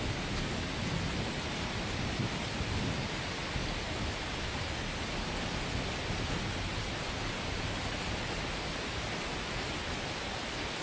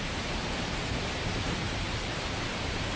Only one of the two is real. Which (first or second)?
first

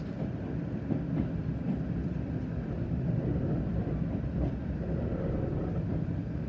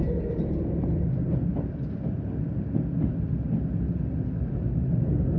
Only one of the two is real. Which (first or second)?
second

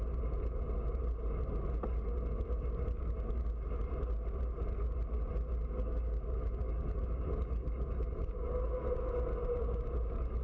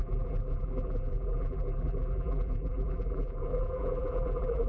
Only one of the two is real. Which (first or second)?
first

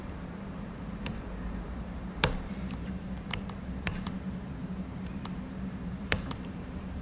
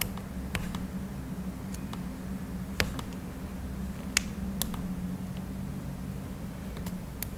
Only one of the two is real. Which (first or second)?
second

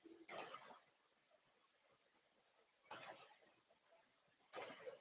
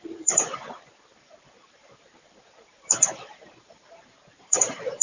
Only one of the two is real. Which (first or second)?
first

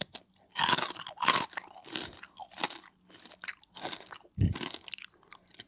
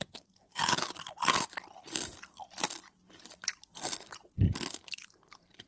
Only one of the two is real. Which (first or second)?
first